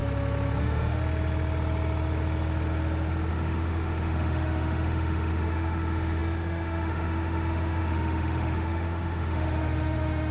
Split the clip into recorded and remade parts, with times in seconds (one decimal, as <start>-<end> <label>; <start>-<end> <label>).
0.0-0.6 recorded; 0.6-1.0 remade; 1.0-3.3 recorded; 3.3-10.3 remade